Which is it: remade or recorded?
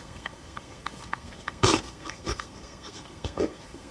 remade